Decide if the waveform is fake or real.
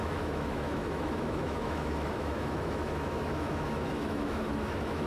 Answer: fake